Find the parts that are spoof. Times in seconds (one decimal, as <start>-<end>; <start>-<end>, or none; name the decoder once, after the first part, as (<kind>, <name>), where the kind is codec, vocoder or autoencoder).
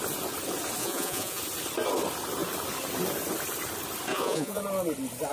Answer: 0.8-1.4 (vocoder, Vocos); 4.1-4.6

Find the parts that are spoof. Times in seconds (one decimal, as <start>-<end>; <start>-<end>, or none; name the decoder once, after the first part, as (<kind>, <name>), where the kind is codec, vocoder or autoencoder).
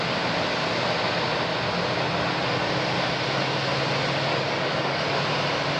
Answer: 4.3-5.0 (codec, DAC)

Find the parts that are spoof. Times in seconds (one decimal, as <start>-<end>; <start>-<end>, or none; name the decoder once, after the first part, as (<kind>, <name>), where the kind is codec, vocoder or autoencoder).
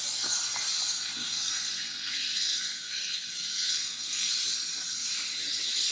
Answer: 1.2-4.3 (codec, SNAC)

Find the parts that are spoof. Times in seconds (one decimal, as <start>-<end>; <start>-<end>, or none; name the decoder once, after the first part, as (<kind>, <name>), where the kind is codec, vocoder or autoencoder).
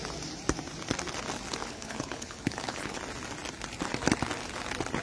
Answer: 1.6-3.0 (codec, HILCodec)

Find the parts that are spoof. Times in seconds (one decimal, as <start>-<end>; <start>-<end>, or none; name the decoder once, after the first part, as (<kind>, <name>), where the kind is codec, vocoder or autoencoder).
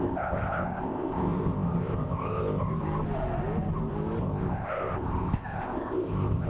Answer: 0.0-2.7 (codec, ZipCodec); 4.2-6.5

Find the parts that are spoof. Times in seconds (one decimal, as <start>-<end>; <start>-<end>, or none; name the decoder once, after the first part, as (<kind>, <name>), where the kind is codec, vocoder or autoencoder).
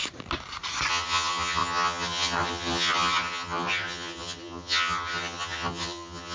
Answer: 0.9-6.3 (vocoder, HiFi-GAN)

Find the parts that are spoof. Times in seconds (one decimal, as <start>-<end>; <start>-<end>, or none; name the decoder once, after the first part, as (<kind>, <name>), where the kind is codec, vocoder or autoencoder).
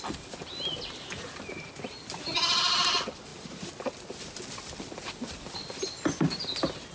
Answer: none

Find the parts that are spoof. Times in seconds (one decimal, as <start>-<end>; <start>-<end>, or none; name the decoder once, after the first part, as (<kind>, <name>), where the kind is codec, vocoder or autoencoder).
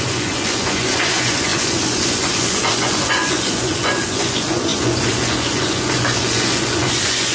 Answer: 0.0-7.3 (vocoder, Vocos)